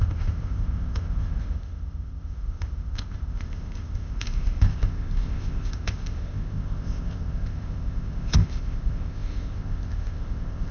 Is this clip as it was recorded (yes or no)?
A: no